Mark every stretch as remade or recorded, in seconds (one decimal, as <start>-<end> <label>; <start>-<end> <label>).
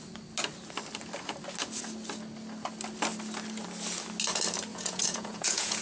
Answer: 0.0-4.7 recorded; 4.7-5.8 remade